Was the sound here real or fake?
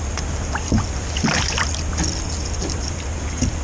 real